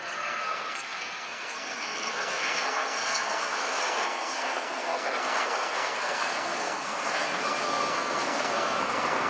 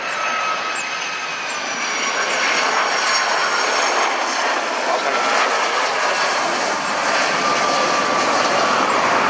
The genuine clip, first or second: second